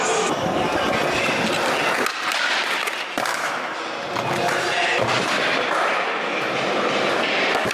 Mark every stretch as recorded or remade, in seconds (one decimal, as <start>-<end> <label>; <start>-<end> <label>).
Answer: 0.0-3.3 recorded; 3.3-3.8 remade; 3.8-7.7 recorded